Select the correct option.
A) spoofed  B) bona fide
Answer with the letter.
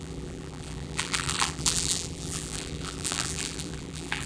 A